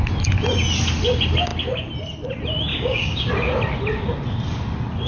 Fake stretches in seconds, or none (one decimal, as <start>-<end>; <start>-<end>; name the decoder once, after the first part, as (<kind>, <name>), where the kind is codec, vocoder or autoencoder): 2.7-3.3 (codec, DAC)